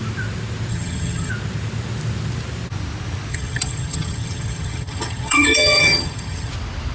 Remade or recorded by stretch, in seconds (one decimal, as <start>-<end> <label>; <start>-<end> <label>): 0.0-0.7 recorded; 0.7-1.3 remade; 1.3-3.3 recorded; 3.3-6.5 remade; 6.5-6.9 recorded